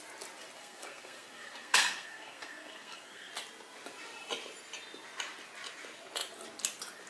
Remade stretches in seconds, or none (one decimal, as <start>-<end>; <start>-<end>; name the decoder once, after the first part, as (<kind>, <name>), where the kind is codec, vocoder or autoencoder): 0.6-3.3 (codec, SNAC)